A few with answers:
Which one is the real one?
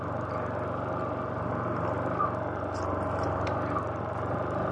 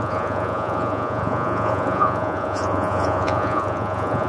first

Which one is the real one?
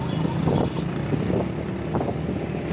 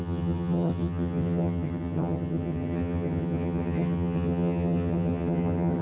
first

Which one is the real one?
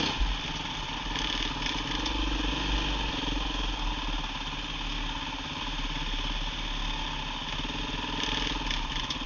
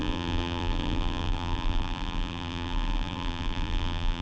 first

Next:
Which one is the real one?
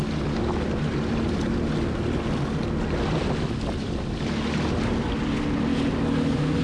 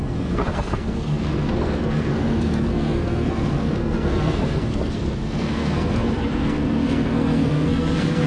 first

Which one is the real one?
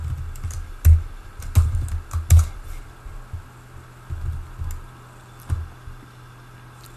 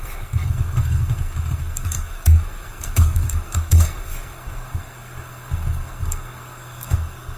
first